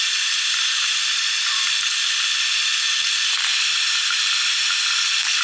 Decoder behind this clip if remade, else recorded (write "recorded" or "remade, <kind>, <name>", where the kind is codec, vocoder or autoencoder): recorded